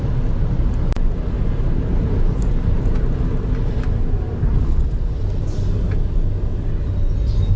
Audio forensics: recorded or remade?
recorded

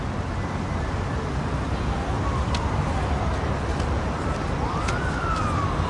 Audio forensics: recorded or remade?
recorded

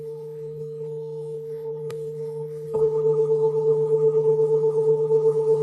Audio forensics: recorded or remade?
remade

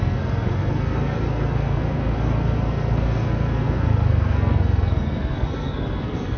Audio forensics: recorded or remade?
remade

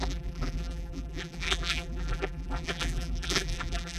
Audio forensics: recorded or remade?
remade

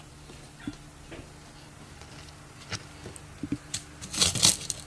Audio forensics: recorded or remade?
recorded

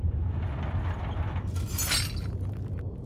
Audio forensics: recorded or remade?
recorded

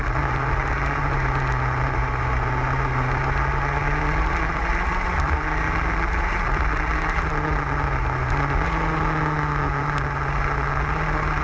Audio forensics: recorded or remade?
recorded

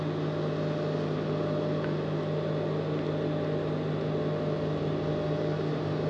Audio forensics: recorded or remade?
recorded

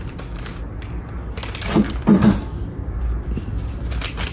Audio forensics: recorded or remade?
recorded